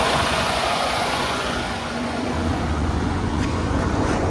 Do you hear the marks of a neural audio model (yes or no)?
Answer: yes